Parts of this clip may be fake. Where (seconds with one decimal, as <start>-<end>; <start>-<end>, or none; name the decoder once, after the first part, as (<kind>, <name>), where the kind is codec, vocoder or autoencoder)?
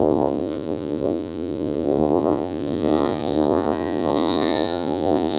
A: 0.0-5.4 (vocoder, Vocos)